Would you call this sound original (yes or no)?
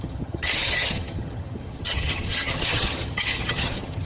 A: no